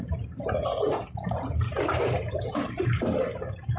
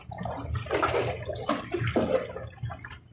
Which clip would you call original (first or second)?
second